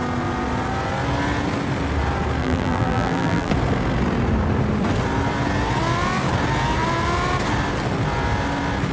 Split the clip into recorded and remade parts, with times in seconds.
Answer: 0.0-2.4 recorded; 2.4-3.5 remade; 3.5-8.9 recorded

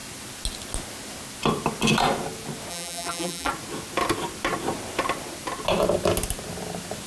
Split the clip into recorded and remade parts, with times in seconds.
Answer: 0.0-2.7 recorded; 2.7-3.5 remade; 3.5-7.1 recorded

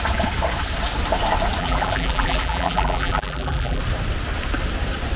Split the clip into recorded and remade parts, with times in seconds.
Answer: 0.0-1.6 recorded; 1.6-3.8 remade; 3.8-5.2 recorded